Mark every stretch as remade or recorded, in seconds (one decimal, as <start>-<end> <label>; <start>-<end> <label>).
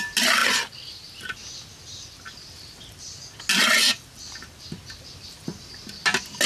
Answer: 0.0-6.5 recorded